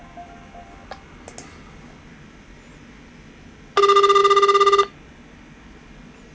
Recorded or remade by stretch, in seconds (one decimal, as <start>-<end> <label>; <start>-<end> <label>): 0.0-6.3 recorded